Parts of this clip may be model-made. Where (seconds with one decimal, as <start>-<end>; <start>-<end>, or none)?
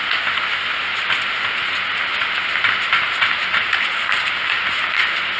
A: 3.2-5.4